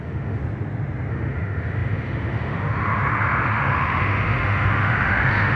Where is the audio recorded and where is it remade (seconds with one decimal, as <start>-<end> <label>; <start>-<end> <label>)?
0.0-0.4 remade; 0.4-1.1 recorded; 1.1-5.6 remade